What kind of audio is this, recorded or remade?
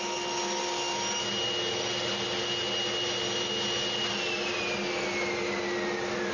recorded